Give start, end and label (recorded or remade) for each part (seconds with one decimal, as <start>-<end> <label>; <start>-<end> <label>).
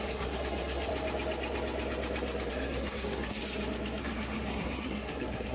0.0-0.9 remade; 0.9-2.5 recorded; 2.5-3.4 remade; 3.4-4.0 recorded; 4.0-5.5 remade